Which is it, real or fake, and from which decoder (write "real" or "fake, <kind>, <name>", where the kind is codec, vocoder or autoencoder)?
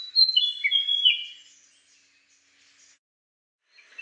real